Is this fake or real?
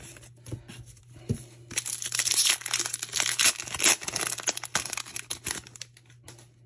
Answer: real